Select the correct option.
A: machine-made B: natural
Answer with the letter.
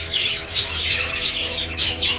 A